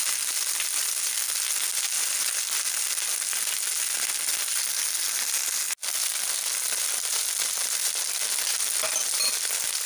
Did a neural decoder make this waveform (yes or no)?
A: no